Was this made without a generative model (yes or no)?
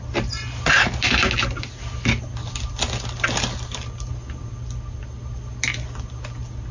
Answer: yes